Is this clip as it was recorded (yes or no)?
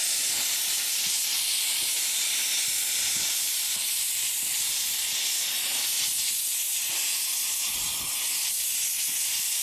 yes